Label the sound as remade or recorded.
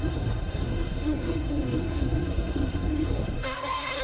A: remade